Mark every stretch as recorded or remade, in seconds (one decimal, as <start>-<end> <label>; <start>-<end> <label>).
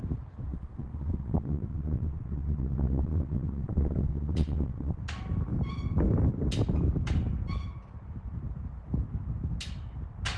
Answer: 0.0-0.5 recorded; 0.5-5.0 remade; 5.0-10.4 recorded